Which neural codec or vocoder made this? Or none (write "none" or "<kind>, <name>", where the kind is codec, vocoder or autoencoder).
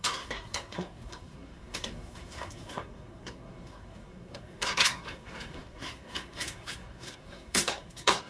codec, SNAC